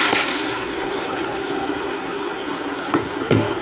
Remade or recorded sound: remade